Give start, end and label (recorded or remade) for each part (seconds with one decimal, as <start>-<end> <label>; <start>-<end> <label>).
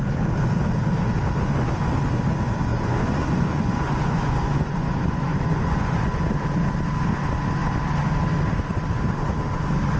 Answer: 0.0-2.7 recorded; 2.7-6.2 remade; 6.2-10.0 recorded